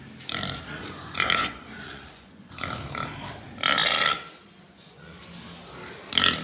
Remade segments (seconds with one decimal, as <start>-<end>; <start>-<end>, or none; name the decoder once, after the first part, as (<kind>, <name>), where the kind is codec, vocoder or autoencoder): 0.7-2.7 (vocoder, Vocos); 4.6-5.2